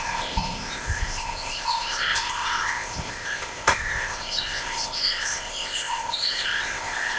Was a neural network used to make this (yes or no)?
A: yes